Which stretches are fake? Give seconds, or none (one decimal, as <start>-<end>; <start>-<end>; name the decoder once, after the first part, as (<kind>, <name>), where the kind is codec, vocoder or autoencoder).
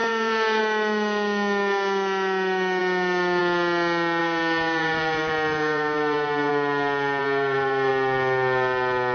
0.0-0.6 (vocoder, BigVGAN v2); 4.2-6.5; 7.2-7.9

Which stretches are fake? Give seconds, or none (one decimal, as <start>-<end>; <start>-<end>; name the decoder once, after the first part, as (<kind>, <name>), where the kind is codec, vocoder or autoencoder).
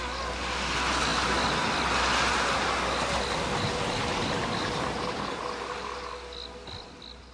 5.8-6.5 (vocoder, BigVGAN v2)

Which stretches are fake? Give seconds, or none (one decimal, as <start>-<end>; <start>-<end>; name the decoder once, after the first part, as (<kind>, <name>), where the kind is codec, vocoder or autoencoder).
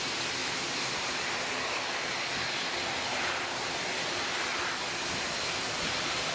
0.4-1.8 (vocoder, BigVGAN v2); 3.1-3.7